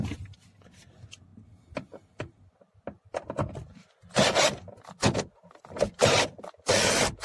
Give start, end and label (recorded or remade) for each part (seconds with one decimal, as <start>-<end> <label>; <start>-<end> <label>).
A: 0.0-7.2 recorded